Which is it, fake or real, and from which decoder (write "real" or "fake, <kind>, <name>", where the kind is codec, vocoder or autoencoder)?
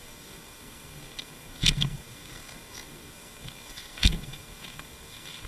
fake, codec, SNAC